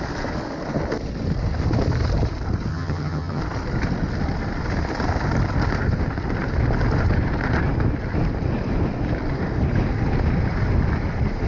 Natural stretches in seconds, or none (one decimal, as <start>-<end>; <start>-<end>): 0.0-2.7; 3.4-11.5